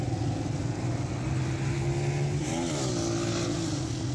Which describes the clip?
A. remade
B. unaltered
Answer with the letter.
B